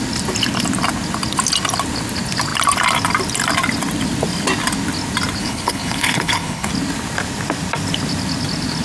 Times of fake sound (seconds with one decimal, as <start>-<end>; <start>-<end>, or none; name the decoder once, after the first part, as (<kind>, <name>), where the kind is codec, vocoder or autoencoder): 5.4-6.7 (codec, HILCodec)